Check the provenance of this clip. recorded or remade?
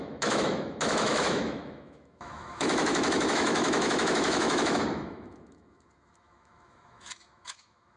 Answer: remade